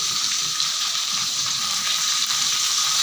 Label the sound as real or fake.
fake